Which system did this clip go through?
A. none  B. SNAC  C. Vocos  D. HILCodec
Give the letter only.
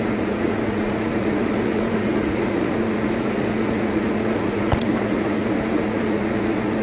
C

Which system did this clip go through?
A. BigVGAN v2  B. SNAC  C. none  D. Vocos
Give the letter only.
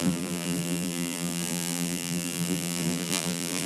A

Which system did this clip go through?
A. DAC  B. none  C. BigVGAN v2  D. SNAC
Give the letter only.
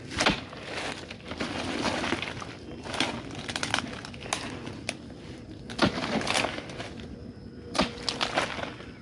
B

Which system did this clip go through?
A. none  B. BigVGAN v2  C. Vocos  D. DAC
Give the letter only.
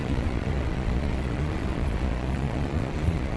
C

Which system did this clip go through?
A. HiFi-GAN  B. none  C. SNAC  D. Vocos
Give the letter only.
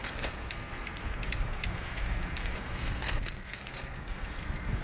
C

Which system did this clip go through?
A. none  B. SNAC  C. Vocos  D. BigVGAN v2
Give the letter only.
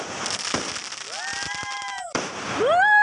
D